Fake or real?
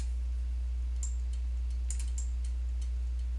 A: real